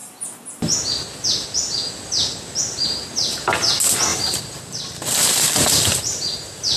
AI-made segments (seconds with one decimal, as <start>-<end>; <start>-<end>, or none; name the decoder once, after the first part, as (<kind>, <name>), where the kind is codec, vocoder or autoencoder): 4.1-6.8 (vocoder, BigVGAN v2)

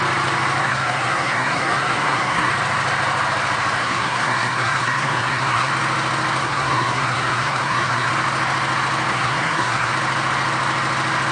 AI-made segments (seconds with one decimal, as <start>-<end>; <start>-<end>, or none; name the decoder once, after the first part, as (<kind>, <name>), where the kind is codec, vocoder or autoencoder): 0.6-2.5 (codec, SNAC); 3.8-5.7; 6.4-8.1; 9.1-9.9

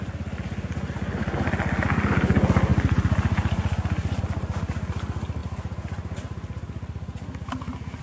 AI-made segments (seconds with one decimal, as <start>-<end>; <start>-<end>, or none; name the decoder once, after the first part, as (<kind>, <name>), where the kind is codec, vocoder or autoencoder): none